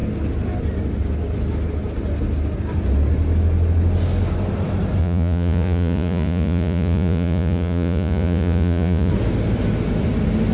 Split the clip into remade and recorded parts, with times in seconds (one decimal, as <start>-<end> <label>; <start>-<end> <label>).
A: 0.0-5.0 recorded; 5.0-9.1 remade; 9.1-10.5 recorded